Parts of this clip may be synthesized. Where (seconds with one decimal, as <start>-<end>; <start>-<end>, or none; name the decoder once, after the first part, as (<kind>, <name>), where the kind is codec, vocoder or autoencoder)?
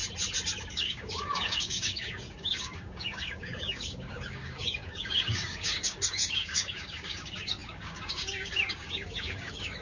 0.7-9.8 (codec, DAC)